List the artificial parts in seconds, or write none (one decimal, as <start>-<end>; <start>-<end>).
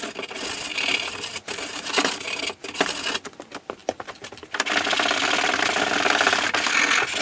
0.7-2.4; 3.8-4.3